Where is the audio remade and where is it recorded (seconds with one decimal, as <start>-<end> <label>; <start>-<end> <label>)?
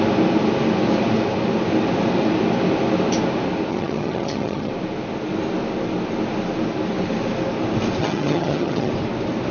0.0-3.7 recorded; 3.7-4.7 remade; 4.7-8.0 recorded; 8.0-8.9 remade; 8.9-9.5 recorded